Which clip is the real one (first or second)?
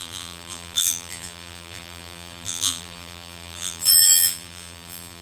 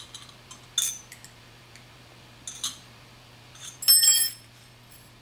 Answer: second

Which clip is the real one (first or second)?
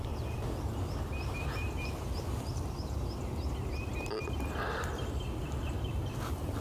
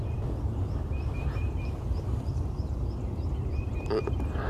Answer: first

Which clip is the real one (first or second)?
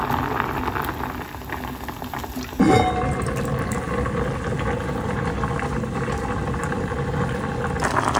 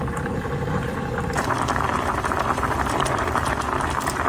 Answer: first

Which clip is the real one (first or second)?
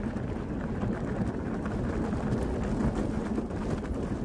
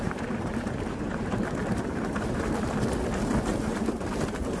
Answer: first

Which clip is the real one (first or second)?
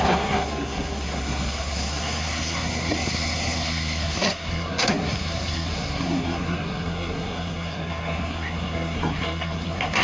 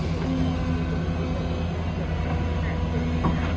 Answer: second